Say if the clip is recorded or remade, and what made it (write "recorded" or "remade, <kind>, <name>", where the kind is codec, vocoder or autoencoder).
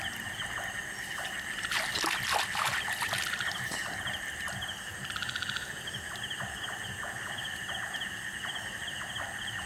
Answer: recorded